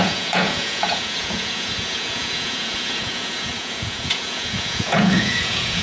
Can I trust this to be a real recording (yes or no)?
no